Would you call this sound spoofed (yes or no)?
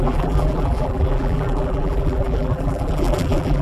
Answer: yes